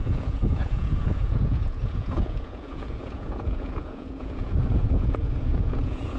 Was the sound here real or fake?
fake